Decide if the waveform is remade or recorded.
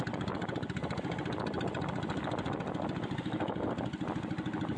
recorded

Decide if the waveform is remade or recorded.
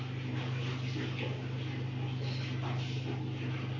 recorded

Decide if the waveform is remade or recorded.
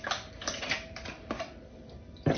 recorded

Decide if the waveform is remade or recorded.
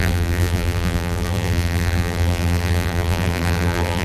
remade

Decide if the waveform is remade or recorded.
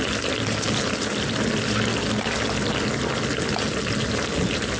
recorded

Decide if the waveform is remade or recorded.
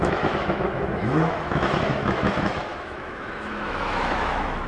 remade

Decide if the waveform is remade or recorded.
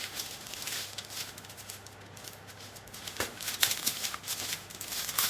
remade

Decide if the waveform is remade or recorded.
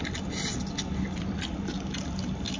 recorded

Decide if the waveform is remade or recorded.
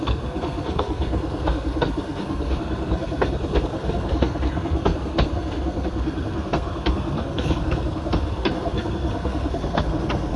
remade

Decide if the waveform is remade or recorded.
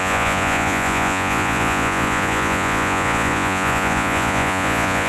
remade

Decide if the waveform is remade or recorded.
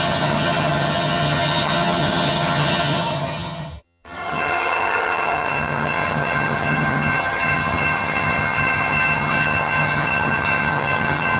remade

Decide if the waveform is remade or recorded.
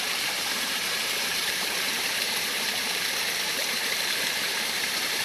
remade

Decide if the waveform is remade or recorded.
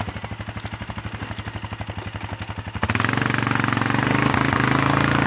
recorded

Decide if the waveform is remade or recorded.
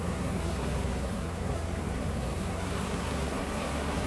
remade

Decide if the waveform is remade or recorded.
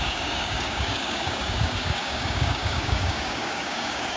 remade